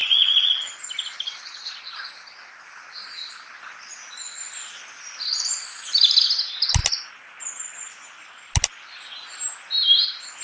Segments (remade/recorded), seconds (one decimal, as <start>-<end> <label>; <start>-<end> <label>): 0.0-0.7 remade; 0.7-10.4 recorded